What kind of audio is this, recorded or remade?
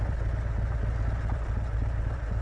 recorded